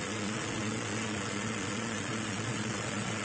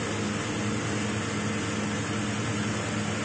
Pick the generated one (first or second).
first